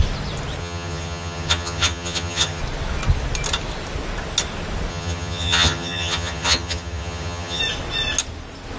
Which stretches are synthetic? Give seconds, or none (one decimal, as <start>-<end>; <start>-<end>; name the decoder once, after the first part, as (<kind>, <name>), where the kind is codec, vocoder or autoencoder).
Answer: 0.6-2.6 (vocoder, HiFi-GAN); 4.9-7.6